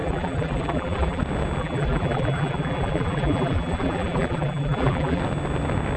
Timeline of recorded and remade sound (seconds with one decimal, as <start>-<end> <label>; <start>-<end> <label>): 0.0-1.2 remade; 1.2-1.6 recorded; 1.6-5.2 remade; 5.2-6.0 recorded

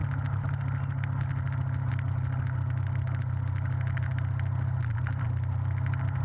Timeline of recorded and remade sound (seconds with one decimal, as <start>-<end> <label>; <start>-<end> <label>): 0.0-6.2 recorded

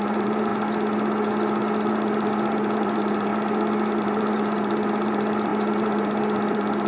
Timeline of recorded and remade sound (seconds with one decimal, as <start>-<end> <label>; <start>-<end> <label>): 0.0-0.5 remade; 0.5-1.9 recorded; 1.9-3.3 remade; 3.3-4.0 recorded; 4.0-6.9 remade

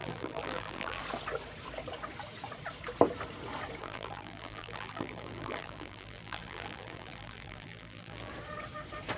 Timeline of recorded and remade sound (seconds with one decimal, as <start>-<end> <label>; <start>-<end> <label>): 0.0-1.0 remade; 1.0-3.8 recorded; 3.8-8.3 remade; 8.3-9.2 recorded